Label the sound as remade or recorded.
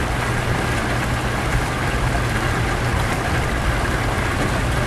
remade